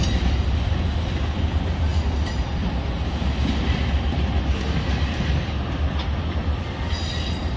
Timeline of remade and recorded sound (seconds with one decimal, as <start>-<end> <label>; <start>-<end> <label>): 0.0-7.6 recorded